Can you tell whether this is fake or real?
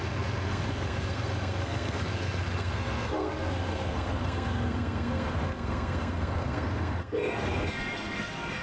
fake